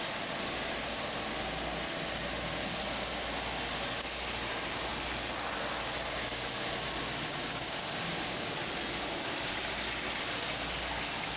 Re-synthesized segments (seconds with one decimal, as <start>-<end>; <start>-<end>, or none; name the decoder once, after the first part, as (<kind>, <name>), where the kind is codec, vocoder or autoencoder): 7.3-7.9 (codec, DAC)